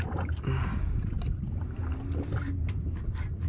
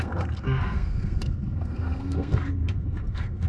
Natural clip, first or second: first